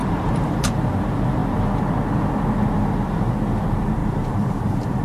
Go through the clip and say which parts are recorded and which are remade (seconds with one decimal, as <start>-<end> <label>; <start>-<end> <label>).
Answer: 0.0-0.8 remade; 0.8-4.0 recorded; 4.0-5.0 remade